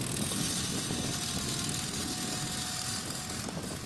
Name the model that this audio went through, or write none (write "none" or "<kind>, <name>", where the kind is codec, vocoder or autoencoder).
none